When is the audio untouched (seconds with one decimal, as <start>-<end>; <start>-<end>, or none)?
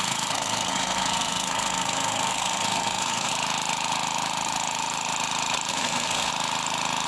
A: 3.3-5.7; 6.3-7.1